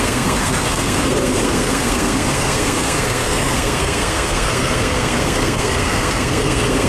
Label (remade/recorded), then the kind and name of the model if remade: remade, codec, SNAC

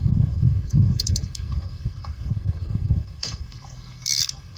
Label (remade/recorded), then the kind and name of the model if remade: remade, codec, SNAC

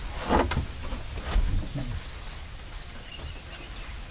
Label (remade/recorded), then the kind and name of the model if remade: recorded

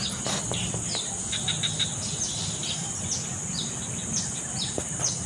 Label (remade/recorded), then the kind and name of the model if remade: recorded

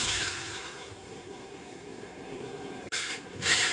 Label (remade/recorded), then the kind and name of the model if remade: remade, codec, SNAC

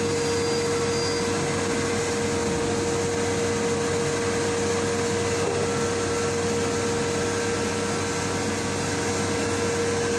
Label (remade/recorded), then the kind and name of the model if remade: recorded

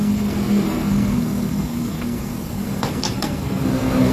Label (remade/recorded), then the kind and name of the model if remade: remade, codec, SNAC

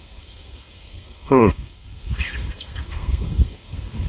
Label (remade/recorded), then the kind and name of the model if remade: remade, codec, SNAC